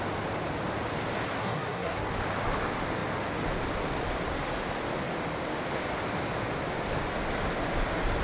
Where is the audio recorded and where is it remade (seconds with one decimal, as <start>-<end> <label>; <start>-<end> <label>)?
0.0-1.4 recorded; 1.4-2.1 remade; 2.1-8.2 recorded